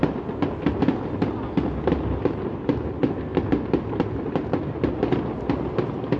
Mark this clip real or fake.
real